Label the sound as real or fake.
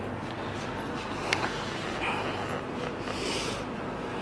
real